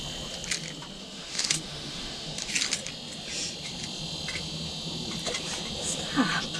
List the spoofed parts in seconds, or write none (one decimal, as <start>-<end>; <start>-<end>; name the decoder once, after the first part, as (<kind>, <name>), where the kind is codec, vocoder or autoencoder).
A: 1.0-2.5 (autoencoder, DAC-VAE)